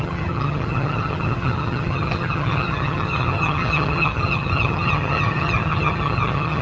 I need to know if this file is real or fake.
fake